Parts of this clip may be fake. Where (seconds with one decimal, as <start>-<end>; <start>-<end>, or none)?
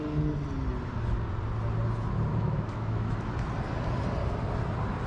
2.3-3.3